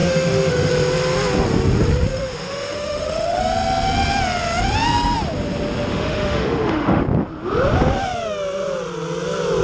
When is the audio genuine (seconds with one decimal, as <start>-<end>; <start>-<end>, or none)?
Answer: 0.7-2.1; 3.4-5.9; 7.0-9.6